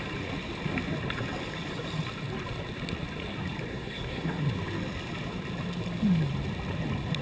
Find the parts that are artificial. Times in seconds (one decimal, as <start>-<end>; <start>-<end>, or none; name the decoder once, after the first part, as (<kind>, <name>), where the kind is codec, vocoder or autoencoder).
3.7-4.4 (codec, SNAC)